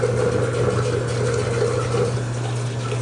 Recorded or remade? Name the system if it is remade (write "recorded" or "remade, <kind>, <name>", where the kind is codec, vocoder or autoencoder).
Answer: recorded